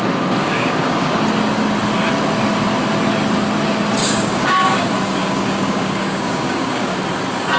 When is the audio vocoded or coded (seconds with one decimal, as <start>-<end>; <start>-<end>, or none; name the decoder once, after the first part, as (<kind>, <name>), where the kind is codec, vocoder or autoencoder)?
0.4-1.2 (codec, DAC); 4.0-4.8; 5.2-7.0